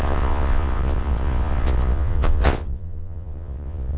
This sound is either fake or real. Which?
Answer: fake